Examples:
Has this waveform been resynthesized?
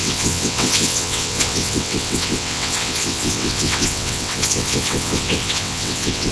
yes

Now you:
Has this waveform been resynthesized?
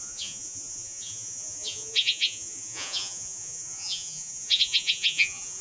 yes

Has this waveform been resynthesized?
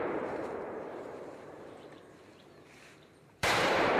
yes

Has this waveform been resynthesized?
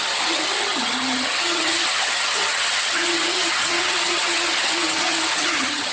yes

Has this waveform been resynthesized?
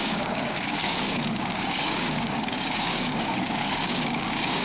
yes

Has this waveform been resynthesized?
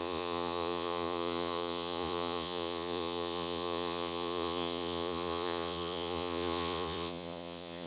yes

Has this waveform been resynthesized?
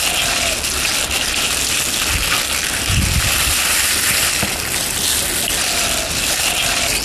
no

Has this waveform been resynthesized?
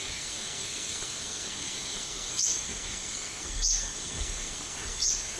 yes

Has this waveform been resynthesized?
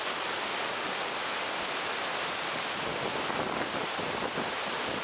no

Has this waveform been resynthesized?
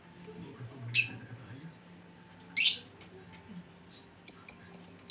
no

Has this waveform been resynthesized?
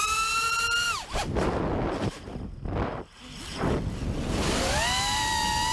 no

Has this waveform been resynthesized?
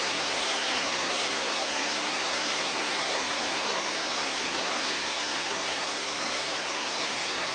yes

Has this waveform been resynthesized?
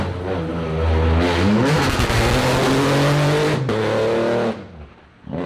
no